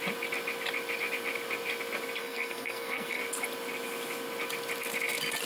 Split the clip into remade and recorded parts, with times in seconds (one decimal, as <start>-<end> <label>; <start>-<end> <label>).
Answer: 0.0-2.2 recorded; 2.2-3.2 remade; 3.2-5.5 recorded